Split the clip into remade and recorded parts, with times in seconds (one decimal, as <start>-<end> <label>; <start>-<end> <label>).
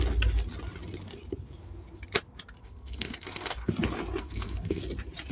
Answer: 0.0-2.6 recorded; 2.6-3.7 remade; 3.7-4.2 recorded; 4.2-4.8 remade; 4.8-5.3 recorded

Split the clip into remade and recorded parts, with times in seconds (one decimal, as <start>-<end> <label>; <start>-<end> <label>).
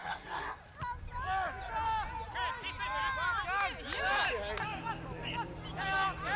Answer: 0.0-0.6 remade; 0.6-6.4 recorded